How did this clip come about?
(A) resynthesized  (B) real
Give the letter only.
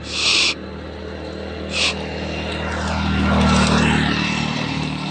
B